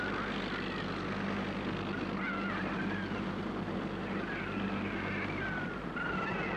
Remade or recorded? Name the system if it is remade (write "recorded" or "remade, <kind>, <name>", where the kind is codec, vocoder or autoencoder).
recorded